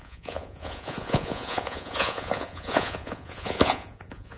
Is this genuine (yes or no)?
no